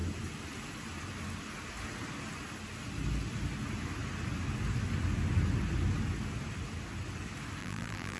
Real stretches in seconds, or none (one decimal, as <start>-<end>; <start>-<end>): 0.0-7.6